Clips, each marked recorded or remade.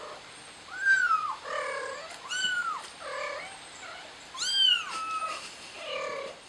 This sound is recorded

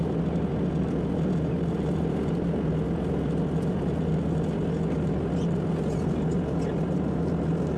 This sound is recorded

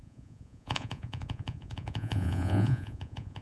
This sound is remade